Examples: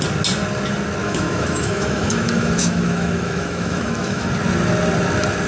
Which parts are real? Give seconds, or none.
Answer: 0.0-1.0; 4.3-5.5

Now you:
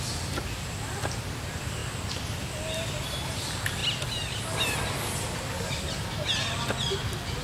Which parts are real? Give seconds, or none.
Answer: 0.0-7.4